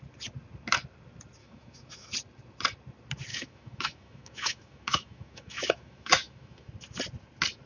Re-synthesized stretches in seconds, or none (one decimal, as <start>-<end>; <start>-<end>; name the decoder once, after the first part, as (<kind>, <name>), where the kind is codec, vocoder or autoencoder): 1.4-2.1 (autoencoder, DAC-VAE); 3.3-6.7

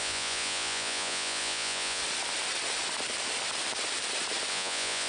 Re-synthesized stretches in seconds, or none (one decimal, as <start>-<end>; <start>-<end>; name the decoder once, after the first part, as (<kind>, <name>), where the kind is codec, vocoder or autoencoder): 0.0-2.0 (vocoder, Vocos); 4.5-5.1

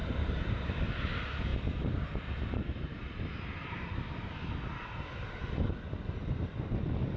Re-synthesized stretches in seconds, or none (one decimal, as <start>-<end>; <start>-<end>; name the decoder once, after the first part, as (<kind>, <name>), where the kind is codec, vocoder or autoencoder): 0.0-0.9 (vocoder, BigVGAN v2)